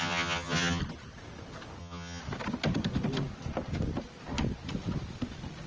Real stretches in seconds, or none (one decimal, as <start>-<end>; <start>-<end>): 0.8-1.8; 2.2-5.7